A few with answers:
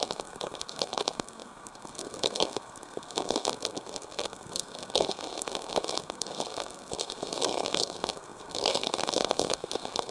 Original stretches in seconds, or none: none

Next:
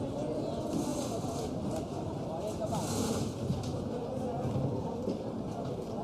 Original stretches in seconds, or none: 0.0-6.0

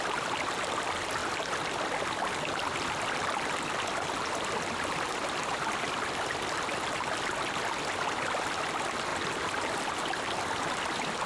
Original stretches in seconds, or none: 0.0-11.3

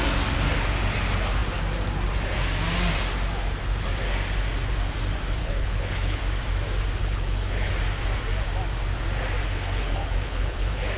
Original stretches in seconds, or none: 0.0-5.4; 6.2-7.0; 7.7-9.4

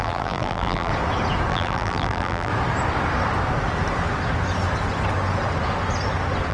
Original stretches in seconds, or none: 0.9-1.5; 2.5-6.5

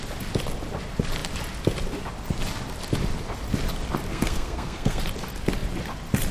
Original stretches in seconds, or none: 0.0-4.1; 5.0-6.3

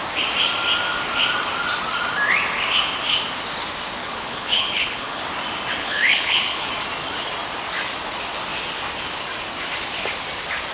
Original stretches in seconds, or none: 0.0-4.0; 5.2-5.8; 6.7-10.7

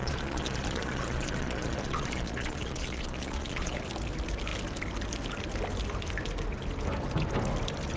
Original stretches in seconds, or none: 3.8-8.0